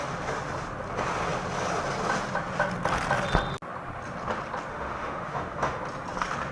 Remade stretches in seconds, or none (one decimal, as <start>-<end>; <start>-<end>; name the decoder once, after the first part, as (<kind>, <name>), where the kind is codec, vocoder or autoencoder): 4.7-5.8 (autoencoder, DAC-VAE)